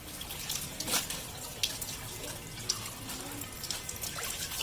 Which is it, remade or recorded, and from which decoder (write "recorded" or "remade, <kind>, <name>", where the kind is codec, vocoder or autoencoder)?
recorded